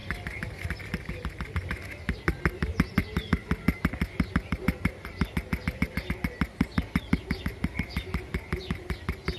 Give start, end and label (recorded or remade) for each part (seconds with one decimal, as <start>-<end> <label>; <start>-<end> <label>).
0.0-9.4 recorded